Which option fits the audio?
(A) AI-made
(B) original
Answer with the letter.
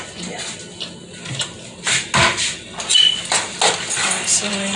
B